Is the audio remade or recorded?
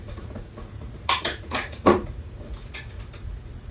remade